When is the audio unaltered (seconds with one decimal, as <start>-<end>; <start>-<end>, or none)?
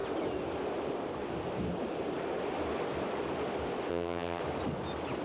0.0-3.9; 4.4-5.2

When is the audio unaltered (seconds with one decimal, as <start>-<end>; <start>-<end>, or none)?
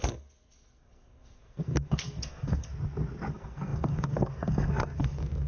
2.7-3.3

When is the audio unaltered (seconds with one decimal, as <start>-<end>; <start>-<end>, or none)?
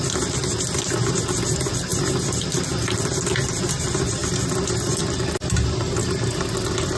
0.0-7.0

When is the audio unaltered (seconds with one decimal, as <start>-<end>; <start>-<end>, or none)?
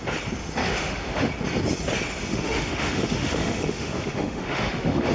0.0-0.6; 1.3-2.3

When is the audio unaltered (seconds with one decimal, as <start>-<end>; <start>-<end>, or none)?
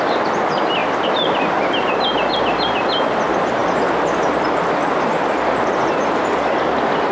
0.0-7.1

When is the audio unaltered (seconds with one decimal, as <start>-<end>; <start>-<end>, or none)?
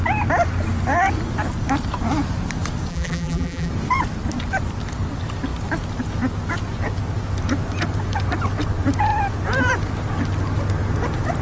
0.0-2.9; 3.7-11.4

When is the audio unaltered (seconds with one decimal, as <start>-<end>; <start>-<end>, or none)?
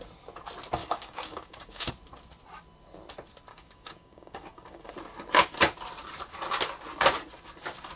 0.0-0.8; 1.9-3.5; 4.9-8.0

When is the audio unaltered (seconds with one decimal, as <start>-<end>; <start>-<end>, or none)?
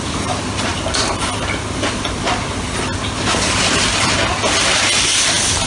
0.0-0.7; 3.7-5.7